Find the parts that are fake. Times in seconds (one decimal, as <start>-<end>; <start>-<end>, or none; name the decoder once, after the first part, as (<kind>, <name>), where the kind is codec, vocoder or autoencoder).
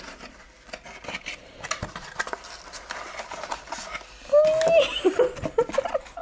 none